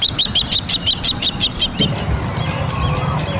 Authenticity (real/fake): real